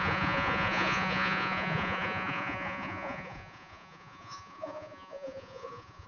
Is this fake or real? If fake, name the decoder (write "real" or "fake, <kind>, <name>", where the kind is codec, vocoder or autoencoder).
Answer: fake, vocoder, Vocos